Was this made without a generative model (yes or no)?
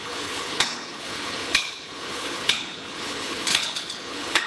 no